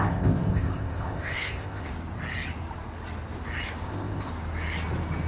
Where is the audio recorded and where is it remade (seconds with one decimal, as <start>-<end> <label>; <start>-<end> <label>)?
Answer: 0.0-1.9 remade; 1.9-3.8 recorded; 3.8-4.3 remade; 4.3-5.3 recorded

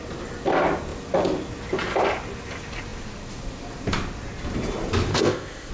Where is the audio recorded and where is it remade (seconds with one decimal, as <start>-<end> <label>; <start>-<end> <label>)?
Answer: 0.0-5.1 recorded; 5.1-5.7 remade